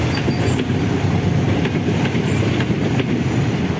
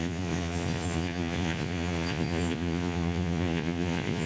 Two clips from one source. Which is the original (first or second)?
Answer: first